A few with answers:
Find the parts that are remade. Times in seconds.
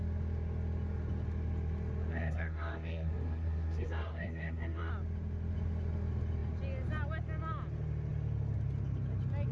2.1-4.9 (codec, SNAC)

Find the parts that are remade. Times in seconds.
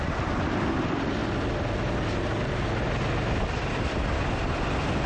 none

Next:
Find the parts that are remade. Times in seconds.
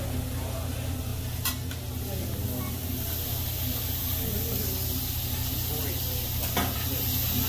none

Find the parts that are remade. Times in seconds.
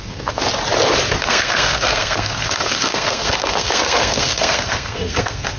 0.0-0.4 (codec, SNAC); 1.2-5.6